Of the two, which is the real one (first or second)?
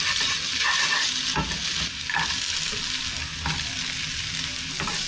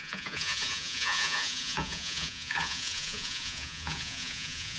first